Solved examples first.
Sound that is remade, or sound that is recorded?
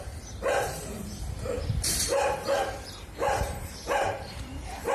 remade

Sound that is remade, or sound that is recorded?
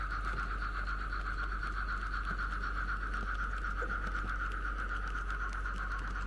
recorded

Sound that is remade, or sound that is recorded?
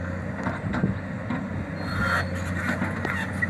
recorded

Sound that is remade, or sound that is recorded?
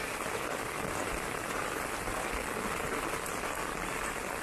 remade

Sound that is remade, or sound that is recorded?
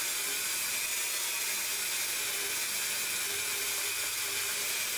recorded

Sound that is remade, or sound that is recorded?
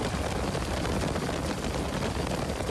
remade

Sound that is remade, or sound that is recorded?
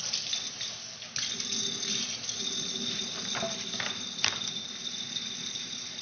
remade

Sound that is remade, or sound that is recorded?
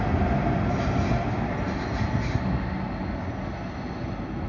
recorded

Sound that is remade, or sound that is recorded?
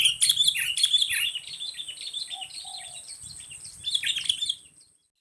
recorded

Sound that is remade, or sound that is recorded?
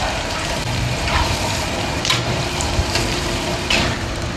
remade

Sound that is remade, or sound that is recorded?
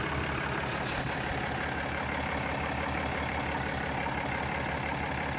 recorded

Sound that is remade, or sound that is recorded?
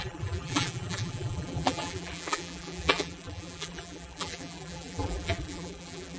remade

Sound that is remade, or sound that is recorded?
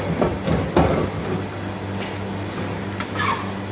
recorded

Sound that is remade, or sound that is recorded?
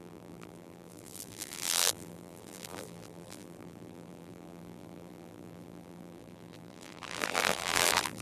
remade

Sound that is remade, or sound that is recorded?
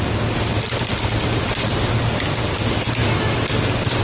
recorded